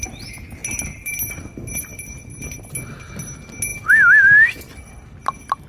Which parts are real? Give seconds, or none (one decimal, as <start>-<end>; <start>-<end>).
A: 0.0-5.7

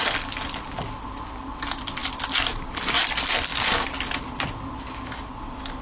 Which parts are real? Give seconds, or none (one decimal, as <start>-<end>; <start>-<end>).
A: 0.0-5.8

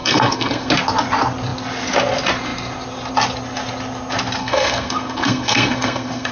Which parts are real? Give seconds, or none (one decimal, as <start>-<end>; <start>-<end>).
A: 0.7-4.4

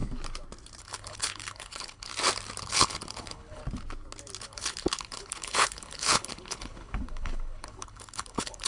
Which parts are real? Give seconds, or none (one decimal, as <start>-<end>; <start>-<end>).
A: 0.0-0.8; 2.1-2.6; 3.6-4.4

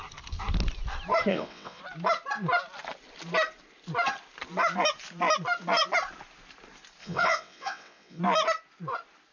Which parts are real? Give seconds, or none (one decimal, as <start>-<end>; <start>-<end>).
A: 0.0-1.3; 1.8-7.0; 8.2-9.3

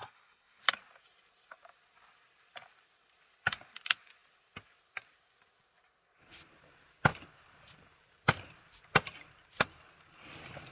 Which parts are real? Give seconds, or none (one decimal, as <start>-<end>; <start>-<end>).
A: 0.6-10.7